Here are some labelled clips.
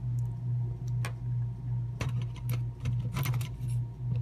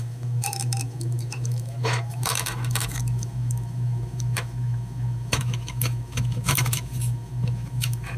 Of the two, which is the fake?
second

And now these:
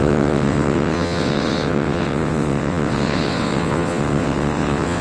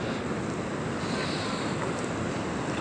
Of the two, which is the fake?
first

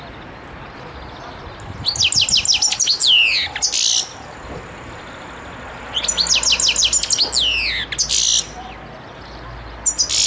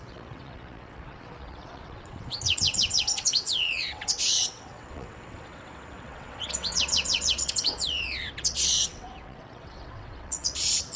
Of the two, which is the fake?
second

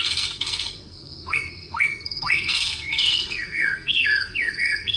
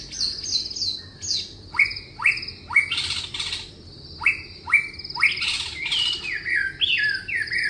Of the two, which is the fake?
first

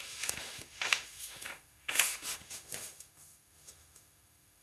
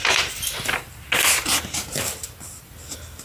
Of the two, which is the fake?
first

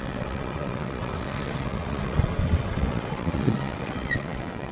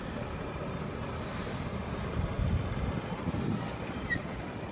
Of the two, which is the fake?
first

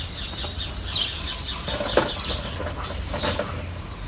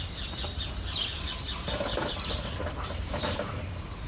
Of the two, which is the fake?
second